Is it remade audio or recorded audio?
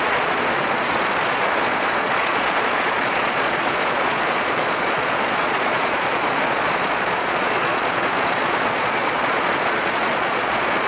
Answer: remade